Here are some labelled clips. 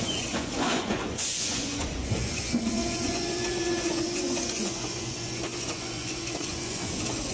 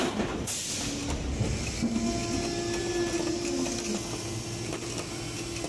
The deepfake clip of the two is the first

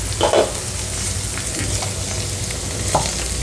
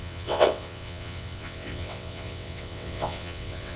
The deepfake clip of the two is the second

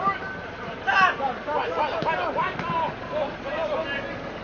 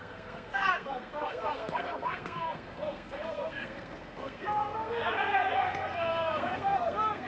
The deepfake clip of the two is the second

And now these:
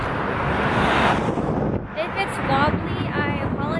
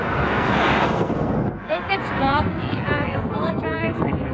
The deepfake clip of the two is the second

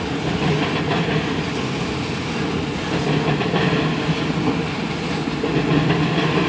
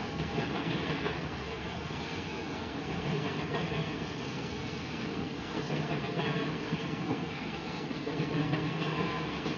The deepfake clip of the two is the second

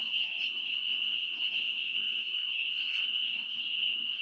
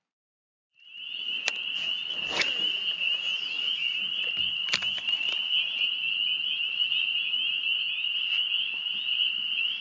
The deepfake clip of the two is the first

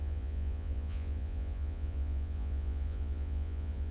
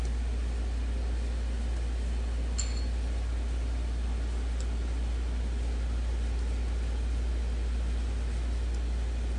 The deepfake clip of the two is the first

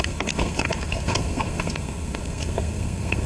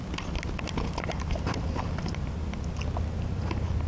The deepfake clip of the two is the first